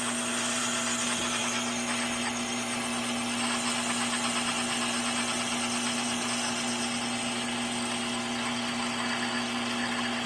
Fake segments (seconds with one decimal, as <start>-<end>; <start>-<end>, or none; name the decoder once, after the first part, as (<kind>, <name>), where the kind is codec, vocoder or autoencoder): none